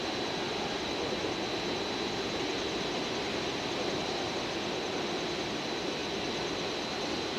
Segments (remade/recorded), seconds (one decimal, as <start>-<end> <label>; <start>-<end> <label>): 0.0-7.4 recorded

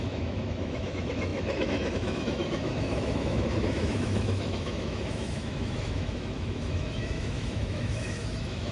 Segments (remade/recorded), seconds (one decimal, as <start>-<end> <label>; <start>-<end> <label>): 0.0-8.7 remade

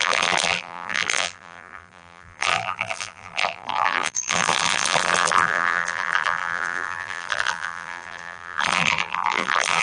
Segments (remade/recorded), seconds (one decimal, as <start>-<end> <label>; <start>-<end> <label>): 0.0-9.8 remade

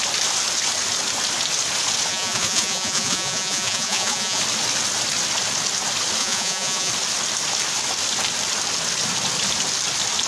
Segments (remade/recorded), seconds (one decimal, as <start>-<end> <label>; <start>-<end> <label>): 0.0-2.1 recorded; 2.1-4.4 remade; 4.4-6.2 recorded; 6.2-6.9 remade; 6.9-10.3 recorded